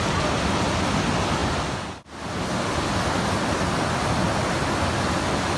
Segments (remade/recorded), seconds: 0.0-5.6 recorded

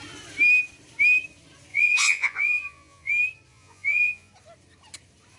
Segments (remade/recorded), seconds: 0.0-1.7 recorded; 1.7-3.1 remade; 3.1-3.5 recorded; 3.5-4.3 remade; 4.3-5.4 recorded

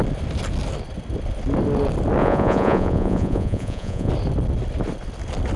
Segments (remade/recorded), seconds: 0.0-2.2 recorded; 2.2-4.1 remade; 4.1-5.6 recorded

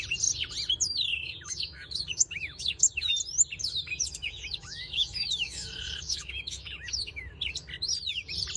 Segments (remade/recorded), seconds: 0.0-1.1 recorded; 1.1-3.1 remade; 3.1-3.6 recorded; 3.6-7.3 remade; 7.3-8.6 recorded

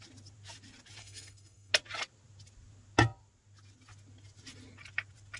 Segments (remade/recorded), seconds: 0.0-1.0 recorded; 1.0-1.7 remade; 1.7-5.4 recorded

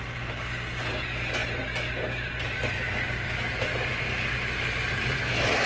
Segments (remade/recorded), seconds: 0.0-5.7 recorded